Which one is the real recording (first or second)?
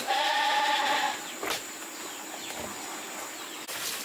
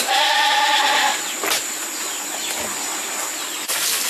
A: second